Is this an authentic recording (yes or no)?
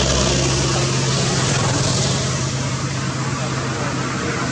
yes